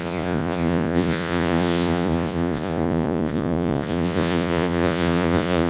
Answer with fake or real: fake